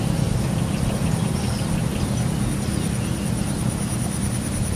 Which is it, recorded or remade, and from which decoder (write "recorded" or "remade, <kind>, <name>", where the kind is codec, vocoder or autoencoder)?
recorded